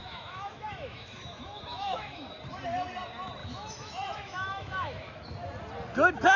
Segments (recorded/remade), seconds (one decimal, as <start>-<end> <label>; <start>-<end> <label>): 0.0-2.3 remade; 2.3-3.4 recorded; 3.4-5.2 remade; 5.2-6.4 recorded